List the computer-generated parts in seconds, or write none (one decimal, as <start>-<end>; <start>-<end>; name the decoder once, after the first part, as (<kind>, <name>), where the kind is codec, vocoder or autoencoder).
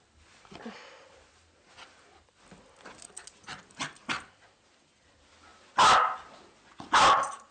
none